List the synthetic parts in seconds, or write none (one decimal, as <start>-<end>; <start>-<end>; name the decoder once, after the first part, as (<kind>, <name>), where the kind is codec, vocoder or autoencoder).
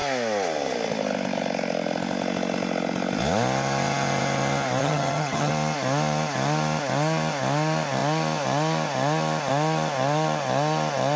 4.8-5.5 (vocoder, HiFi-GAN)